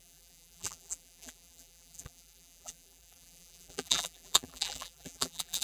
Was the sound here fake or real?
fake